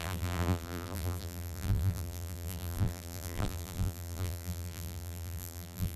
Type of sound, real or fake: fake